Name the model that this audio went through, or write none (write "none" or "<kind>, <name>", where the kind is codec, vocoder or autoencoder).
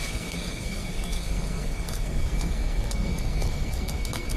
codec, SNAC